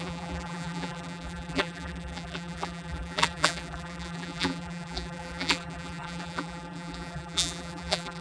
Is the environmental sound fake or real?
fake